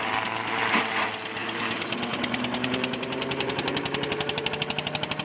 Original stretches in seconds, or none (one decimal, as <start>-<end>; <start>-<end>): 0.0-1.4; 4.5-5.2